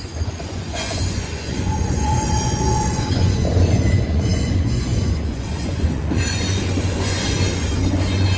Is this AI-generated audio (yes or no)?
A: yes